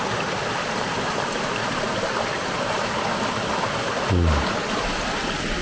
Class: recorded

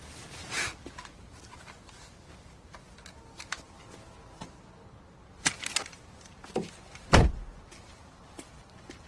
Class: recorded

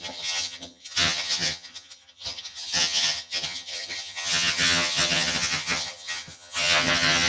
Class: remade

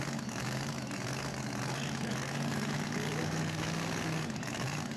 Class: remade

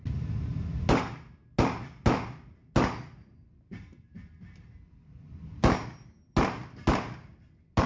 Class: recorded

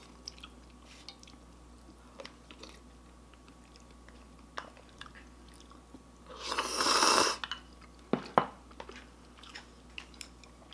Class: recorded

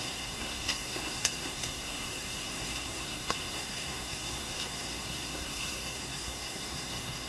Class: remade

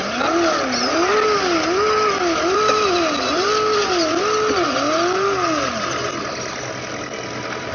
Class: recorded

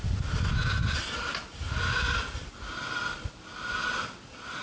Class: recorded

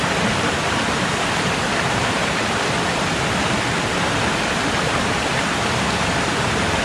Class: recorded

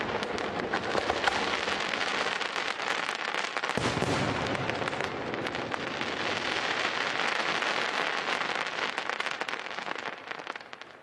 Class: recorded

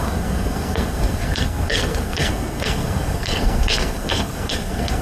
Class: remade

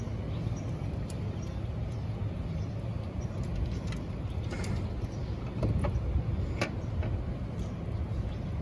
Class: recorded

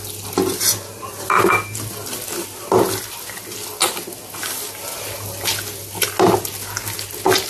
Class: recorded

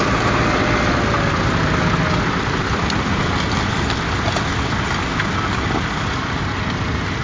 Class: recorded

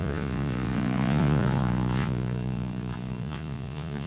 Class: remade